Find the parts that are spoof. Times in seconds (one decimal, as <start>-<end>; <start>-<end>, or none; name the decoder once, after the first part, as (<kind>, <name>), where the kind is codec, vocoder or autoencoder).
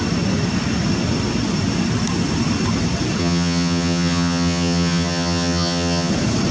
3.2-6.1 (vocoder, HiFi-GAN)